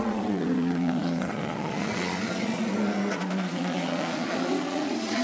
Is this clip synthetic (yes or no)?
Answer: yes